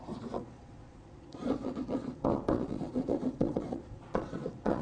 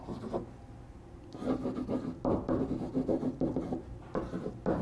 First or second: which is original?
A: second